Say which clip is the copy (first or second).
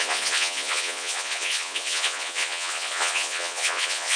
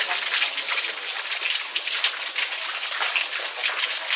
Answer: first